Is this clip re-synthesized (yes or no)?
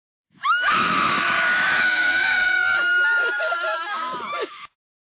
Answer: yes